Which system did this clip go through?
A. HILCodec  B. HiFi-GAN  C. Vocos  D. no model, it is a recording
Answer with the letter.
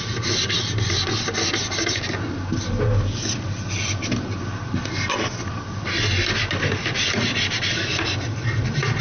D